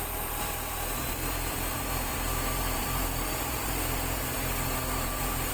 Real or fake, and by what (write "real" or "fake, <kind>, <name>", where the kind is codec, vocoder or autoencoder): fake, vocoder, BigVGAN v2